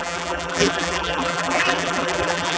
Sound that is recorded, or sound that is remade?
remade